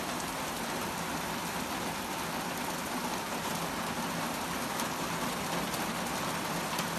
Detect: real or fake real